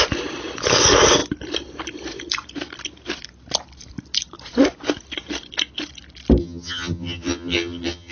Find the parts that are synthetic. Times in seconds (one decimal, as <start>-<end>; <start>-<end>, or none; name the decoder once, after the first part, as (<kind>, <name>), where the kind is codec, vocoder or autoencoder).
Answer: 6.4-8.1 (vocoder, HiFi-GAN)